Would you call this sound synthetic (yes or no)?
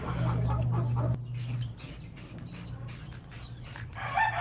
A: no